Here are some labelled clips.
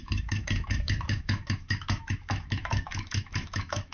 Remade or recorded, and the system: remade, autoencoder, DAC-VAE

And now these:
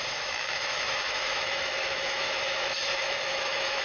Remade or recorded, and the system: remade, autoencoder, DAC-VAE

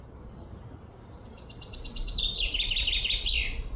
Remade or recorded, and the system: recorded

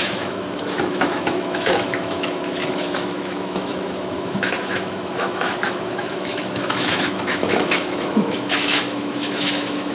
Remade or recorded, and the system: remade, autoencoder, DAC-VAE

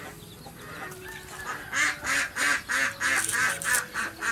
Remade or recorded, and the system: recorded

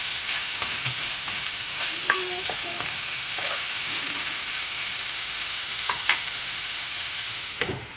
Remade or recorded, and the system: remade, autoencoder, DAC-VAE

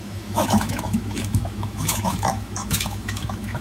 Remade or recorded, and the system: remade, autoencoder, DAC-VAE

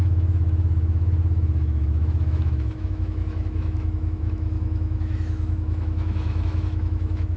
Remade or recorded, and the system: remade, autoencoder, DAC-VAE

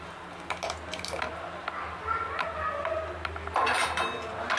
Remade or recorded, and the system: recorded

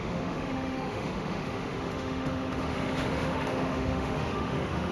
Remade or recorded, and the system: remade, autoencoder, DAC-VAE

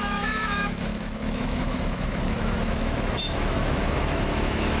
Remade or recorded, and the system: remade, autoencoder, DAC-VAE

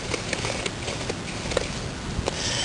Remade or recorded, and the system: recorded